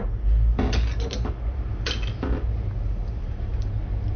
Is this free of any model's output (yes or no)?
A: yes